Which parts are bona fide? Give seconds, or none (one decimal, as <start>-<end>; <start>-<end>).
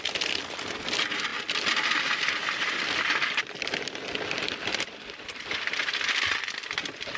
0.0-7.2